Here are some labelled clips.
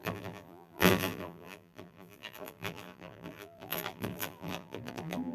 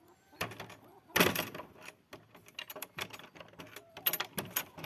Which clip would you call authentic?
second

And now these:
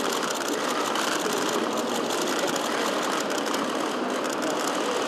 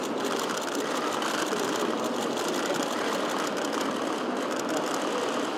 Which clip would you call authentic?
first